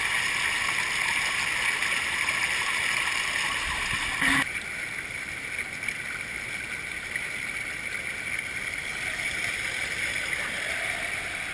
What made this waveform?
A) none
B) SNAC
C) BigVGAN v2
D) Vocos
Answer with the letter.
A